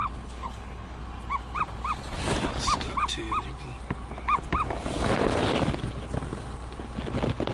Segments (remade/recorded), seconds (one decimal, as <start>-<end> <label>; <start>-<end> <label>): 0.0-1.0 remade; 1.0-7.5 recorded